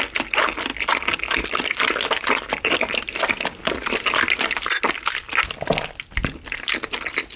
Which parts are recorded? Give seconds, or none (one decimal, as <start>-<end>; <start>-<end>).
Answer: 0.0-7.4